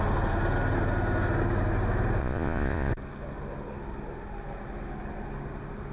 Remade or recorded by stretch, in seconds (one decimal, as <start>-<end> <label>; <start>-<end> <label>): 0.0-2.2 recorded; 2.2-2.9 remade; 2.9-5.9 recorded